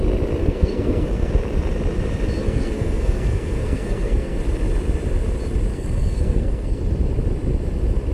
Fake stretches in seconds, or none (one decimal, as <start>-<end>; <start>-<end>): 0.4-1.3; 2.4-4.4; 5.7-6.8